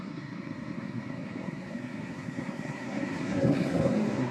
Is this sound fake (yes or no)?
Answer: yes